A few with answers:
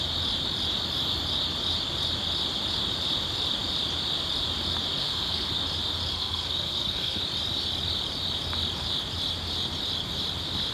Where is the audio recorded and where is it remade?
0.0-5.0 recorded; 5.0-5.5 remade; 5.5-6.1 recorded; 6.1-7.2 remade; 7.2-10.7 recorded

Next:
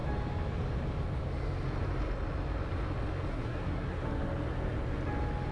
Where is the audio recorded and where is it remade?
0.0-3.3 recorded; 3.3-4.0 remade; 4.0-5.5 recorded

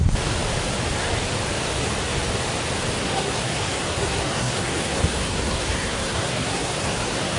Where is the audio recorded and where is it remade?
0.0-3.0 recorded; 3.0-7.4 remade

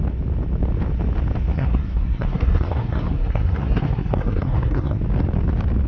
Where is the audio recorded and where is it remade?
0.0-1.5 recorded; 1.5-5.0 remade; 5.0-5.9 recorded

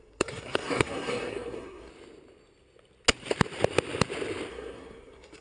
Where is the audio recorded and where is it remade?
0.0-1.9 remade; 1.9-4.5 recorded; 4.5-5.4 remade